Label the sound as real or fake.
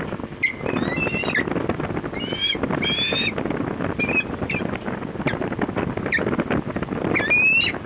real